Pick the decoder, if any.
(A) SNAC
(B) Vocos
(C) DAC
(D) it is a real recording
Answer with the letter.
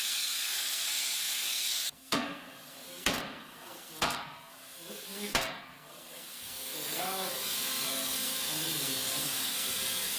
A